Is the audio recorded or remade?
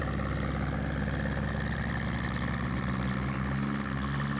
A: recorded